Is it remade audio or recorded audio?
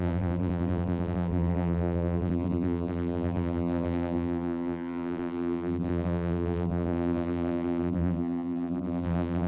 remade